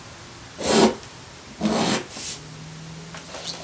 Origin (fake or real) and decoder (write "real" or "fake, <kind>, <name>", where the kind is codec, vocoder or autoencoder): real